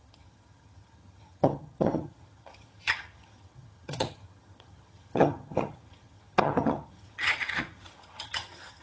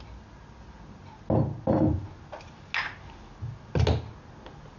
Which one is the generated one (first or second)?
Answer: first